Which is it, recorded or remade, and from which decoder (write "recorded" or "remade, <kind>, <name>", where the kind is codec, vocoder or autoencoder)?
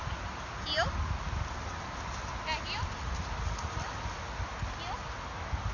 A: recorded